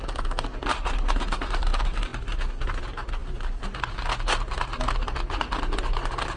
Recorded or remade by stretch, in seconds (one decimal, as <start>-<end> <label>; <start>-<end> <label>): 0.0-6.4 recorded